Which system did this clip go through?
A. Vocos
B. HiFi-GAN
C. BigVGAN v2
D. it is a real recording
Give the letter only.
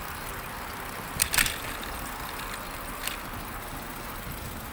D